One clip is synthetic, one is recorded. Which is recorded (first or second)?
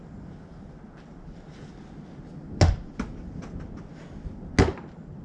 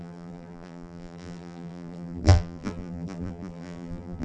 first